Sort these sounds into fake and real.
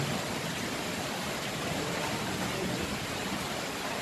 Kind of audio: fake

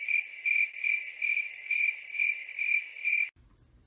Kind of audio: real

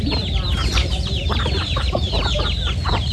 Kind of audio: fake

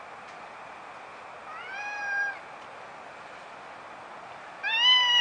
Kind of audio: real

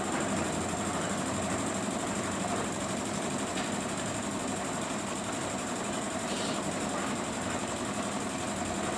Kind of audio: fake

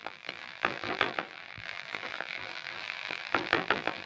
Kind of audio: fake